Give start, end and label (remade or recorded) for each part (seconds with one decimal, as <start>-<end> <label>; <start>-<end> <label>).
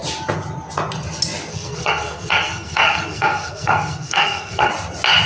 0.0-1.5 recorded; 1.5-4.7 remade; 4.7-5.3 recorded